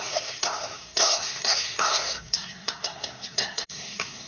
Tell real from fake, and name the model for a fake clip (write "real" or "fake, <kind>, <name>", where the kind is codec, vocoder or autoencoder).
fake, codec, SNAC